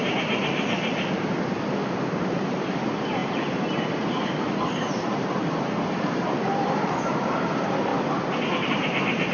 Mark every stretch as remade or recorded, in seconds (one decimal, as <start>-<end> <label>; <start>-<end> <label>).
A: 0.0-7.9 remade; 7.9-8.7 recorded; 8.7-9.3 remade